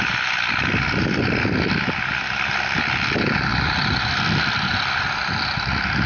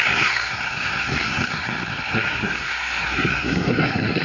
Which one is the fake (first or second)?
second